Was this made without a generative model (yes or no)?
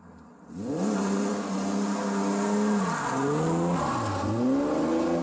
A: yes